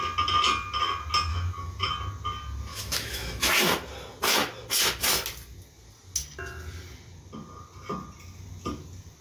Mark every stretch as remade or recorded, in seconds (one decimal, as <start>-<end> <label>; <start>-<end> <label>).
0.0-1.3 recorded; 1.3-1.9 remade; 1.9-2.7 recorded; 2.7-3.5 remade; 3.5-9.2 recorded